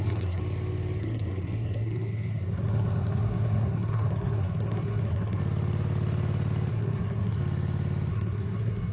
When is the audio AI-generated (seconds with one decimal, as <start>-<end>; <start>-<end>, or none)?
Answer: 0.0-0.4; 1.0-5.4; 6.7-7.4; 8.1-8.9